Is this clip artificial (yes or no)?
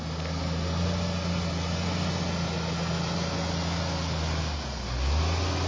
no